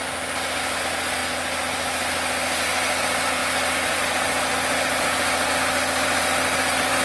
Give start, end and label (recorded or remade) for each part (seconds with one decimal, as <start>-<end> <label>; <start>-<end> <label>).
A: 0.0-7.0 recorded